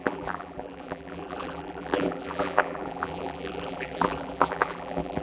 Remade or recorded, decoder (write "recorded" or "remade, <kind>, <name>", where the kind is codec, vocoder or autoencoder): remade, vocoder, BigVGAN v2